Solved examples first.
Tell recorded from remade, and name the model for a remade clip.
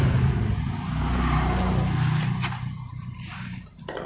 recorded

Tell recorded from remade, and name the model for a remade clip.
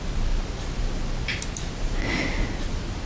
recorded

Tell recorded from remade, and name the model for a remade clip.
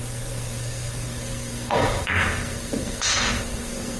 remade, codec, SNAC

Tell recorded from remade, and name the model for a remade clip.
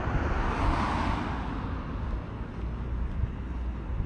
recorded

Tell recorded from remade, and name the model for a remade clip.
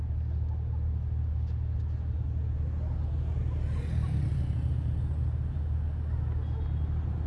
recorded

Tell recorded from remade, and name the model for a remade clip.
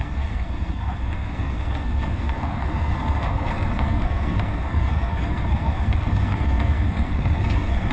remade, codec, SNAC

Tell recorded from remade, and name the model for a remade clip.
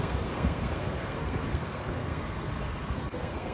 remade, codec, SNAC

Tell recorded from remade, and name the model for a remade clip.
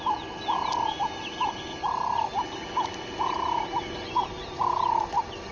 recorded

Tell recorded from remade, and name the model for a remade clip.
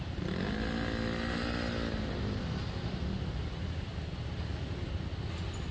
recorded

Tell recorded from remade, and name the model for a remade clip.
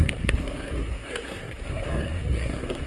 remade, codec, SNAC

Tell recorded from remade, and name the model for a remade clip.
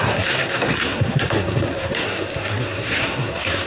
remade, codec, SNAC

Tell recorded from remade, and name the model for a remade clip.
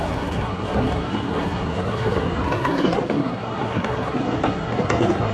remade, codec, SNAC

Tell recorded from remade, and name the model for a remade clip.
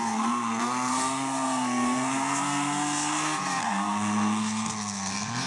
remade, codec, SNAC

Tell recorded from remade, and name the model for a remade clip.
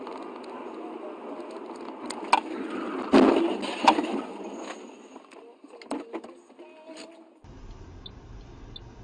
recorded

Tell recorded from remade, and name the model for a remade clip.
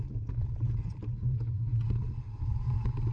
recorded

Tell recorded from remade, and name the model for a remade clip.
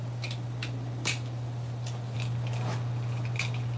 recorded